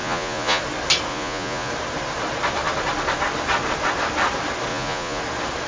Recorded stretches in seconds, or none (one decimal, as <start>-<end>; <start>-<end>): 0.6-1.1; 1.7-4.7; 5.2-5.7